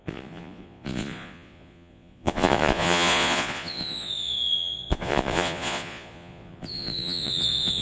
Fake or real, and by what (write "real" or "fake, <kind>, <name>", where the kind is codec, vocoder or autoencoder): fake, vocoder, Vocos